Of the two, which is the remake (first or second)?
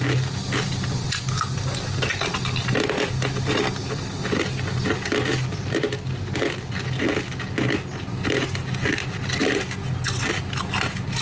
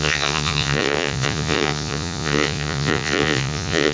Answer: second